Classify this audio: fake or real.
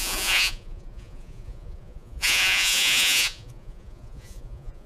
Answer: fake